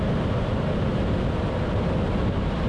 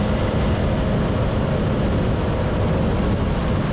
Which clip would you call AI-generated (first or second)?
first